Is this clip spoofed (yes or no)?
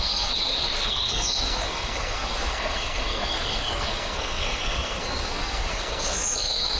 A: yes